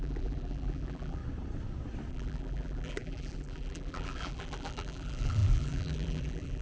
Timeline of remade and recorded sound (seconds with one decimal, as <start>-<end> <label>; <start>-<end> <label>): 0.0-1.2 remade; 1.2-2.1 recorded; 2.1-6.6 remade